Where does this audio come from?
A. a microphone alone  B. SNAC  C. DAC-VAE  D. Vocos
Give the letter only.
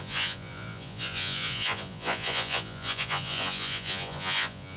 D